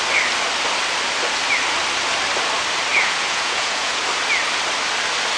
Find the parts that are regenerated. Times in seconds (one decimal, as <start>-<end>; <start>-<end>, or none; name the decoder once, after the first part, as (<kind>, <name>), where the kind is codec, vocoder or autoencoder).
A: 2.9-4.0 (vocoder, Vocos)